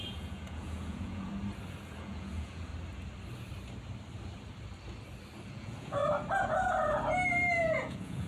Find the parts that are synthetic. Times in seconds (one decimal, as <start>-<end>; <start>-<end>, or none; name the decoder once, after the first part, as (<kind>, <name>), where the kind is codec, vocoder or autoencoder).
0.0-1.3 (vocoder, Vocos); 2.0-2.7; 5.5-6.0; 7.6-8.3